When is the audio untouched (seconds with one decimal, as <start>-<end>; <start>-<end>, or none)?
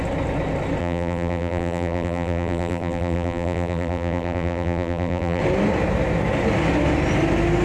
0.0-0.8; 5.4-7.6